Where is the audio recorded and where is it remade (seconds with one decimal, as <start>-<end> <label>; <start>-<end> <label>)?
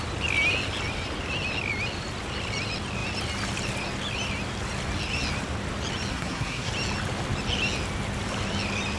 0.0-6.1 recorded; 6.1-6.7 remade; 6.7-9.0 recorded